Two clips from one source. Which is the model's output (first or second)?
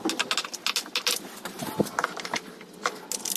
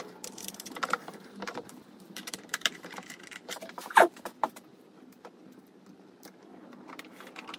second